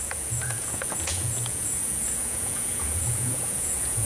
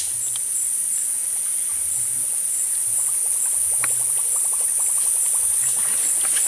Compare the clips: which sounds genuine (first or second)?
second